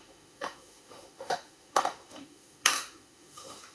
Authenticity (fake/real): fake